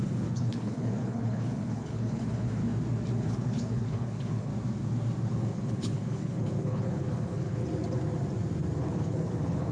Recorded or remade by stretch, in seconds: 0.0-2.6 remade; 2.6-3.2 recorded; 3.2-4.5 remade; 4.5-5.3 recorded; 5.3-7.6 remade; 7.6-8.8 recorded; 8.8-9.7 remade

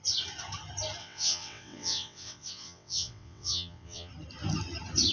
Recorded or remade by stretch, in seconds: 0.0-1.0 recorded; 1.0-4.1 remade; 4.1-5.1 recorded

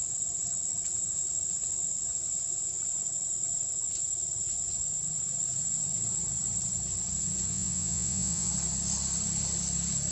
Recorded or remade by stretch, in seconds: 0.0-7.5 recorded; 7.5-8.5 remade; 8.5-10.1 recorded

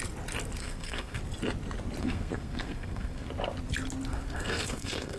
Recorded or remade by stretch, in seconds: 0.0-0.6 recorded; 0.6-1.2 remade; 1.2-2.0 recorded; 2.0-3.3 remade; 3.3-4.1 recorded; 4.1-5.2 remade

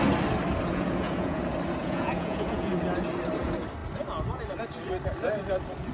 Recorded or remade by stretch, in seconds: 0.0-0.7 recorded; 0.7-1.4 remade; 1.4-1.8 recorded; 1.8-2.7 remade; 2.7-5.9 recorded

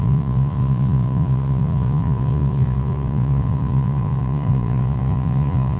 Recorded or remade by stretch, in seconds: 0.0-5.8 remade

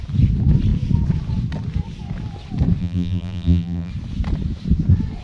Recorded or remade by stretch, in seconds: 0.0-2.8 recorded; 2.8-3.9 remade; 3.9-5.2 recorded

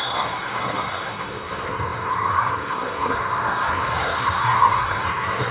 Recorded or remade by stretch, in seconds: 0.0-5.5 remade